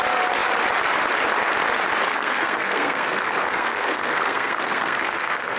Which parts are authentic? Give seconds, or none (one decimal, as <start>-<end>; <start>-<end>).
0.0-2.1